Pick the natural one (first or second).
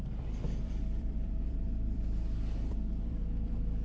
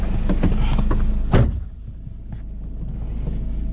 second